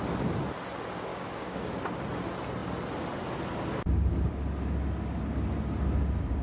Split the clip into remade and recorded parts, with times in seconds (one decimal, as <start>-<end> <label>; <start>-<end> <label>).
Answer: 0.0-1.1 recorded; 1.1-1.7 remade; 1.7-6.4 recorded